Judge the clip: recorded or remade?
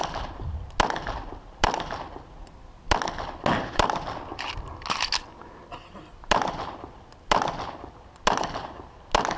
recorded